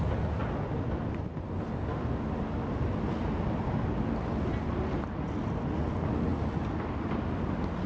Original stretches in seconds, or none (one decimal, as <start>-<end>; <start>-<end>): 0.0-7.9